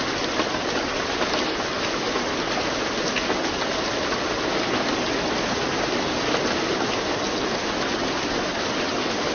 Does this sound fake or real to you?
real